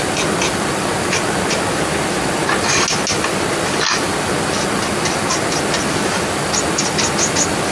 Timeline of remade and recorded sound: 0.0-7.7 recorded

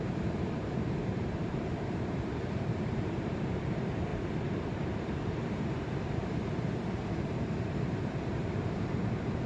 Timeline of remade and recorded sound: 0.0-9.5 remade

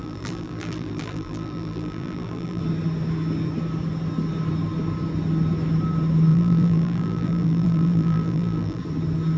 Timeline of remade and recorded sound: 0.0-2.6 remade; 2.6-6.3 recorded; 6.3-8.8 remade; 8.8-9.4 recorded

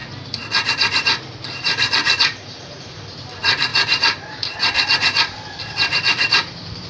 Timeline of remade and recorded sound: 0.0-3.7 recorded; 3.7-6.9 remade

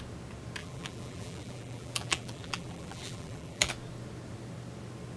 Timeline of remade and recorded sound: 0.0-0.6 recorded; 0.6-3.7 remade; 3.7-5.2 recorded

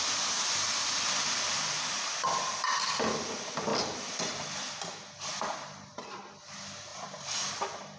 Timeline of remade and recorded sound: 0.0-6.9 recorded; 6.9-7.5 remade; 7.5-8.0 recorded

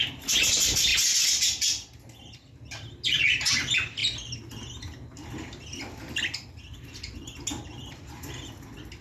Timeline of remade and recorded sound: 0.0-9.0 recorded